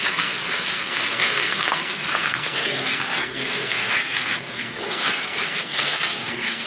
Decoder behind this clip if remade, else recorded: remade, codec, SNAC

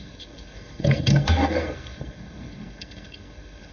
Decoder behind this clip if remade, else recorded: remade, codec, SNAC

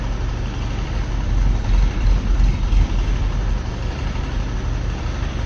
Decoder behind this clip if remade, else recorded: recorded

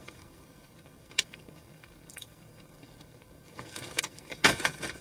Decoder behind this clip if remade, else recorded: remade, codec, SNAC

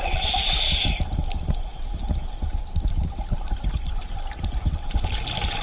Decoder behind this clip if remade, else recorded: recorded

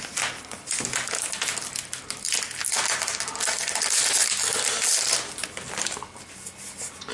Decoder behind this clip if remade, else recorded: recorded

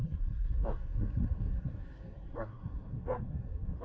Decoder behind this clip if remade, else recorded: remade, codec, SNAC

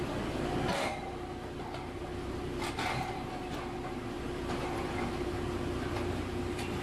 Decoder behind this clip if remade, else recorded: recorded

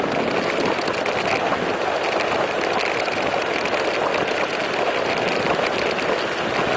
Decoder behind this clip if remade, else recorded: recorded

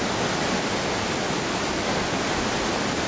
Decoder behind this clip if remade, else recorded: recorded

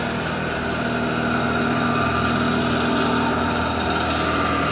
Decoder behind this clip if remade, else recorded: recorded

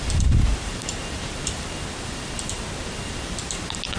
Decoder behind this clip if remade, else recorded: recorded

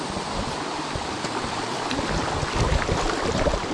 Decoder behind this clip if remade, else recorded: recorded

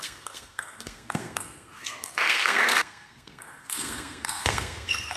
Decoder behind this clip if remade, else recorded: remade, codec, SNAC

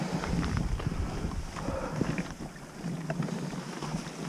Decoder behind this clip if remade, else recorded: recorded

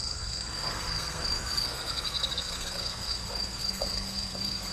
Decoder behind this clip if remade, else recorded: remade, codec, SNAC